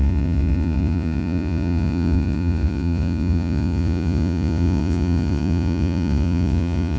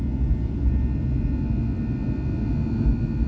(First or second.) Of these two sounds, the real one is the second